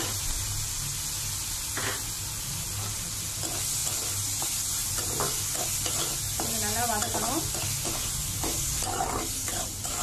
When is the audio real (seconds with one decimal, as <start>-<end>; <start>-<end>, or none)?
0.0-10.0